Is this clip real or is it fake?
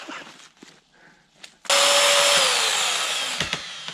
real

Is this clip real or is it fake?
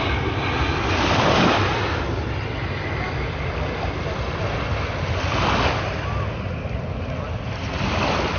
real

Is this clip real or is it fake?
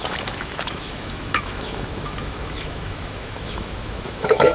fake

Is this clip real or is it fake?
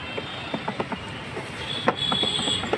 real